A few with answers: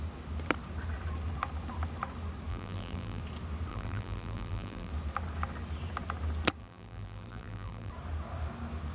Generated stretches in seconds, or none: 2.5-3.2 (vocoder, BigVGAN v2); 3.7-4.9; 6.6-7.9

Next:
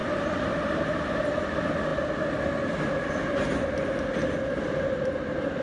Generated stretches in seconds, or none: 0.0-1.2 (vocoder, BigVGAN v2)

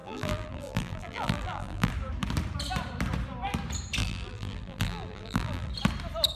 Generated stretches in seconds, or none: 0.0-1.9 (vocoder, BigVGAN v2); 4.0-5.7